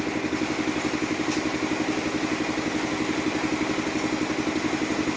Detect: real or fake real